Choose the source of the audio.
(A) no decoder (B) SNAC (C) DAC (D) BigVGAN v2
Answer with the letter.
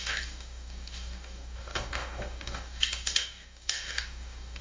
C